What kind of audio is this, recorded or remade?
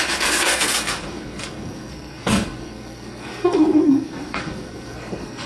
remade